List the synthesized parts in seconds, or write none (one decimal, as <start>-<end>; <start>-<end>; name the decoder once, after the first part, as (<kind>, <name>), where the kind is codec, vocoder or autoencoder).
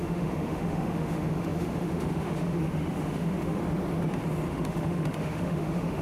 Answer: 0.0-3.6 (autoencoder, DAC-VAE); 4.5-6.0